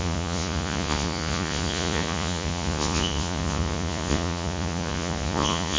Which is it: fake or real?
fake